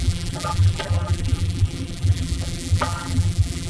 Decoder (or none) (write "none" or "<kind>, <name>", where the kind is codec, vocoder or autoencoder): vocoder, BigVGAN v2